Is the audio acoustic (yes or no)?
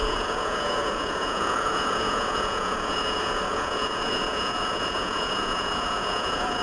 no